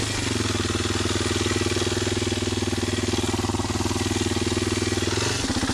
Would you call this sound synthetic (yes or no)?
no